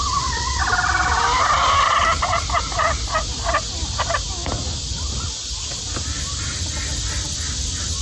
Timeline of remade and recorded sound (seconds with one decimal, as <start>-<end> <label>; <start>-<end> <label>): 0.0-0.6 remade; 0.6-8.0 recorded